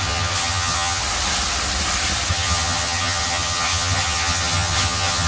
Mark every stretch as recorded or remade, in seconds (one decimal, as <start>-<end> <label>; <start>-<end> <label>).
0.0-1.0 remade; 1.0-2.3 recorded; 2.3-5.3 remade